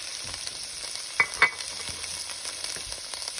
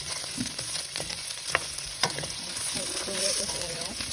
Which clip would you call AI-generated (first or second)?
second